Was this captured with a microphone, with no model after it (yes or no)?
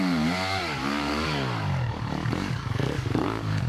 no